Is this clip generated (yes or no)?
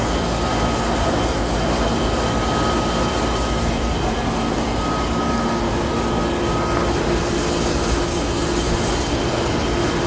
no